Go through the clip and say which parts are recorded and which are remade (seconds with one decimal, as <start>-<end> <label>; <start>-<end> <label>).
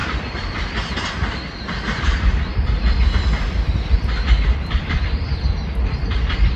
0.0-4.0 recorded; 4.0-6.6 remade